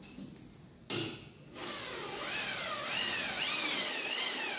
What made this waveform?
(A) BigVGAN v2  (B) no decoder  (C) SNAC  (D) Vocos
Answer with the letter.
B